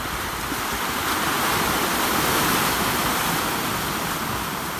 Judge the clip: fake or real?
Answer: real